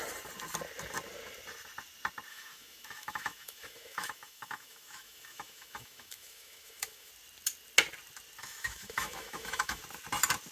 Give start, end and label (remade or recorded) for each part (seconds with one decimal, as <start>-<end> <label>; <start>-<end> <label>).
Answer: 0.0-2.3 recorded; 2.3-7.1 remade; 7.1-8.4 recorded; 8.4-9.8 remade; 9.8-10.5 recorded